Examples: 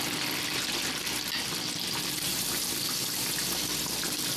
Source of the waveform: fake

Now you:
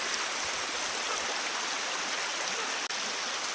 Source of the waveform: real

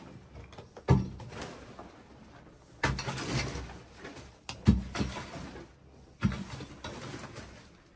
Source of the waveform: real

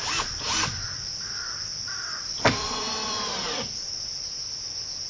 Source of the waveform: real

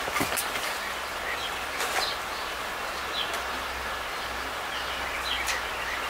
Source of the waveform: real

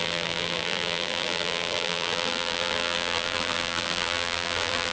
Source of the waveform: fake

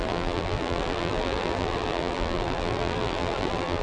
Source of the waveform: fake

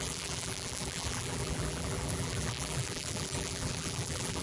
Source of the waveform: fake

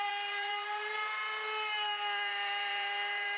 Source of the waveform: fake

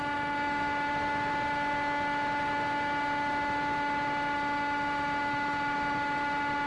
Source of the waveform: real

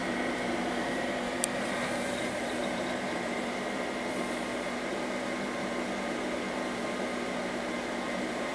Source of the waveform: fake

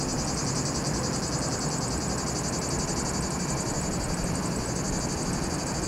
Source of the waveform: real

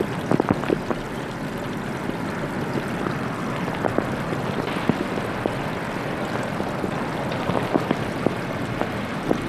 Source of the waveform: real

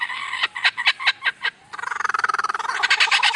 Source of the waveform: fake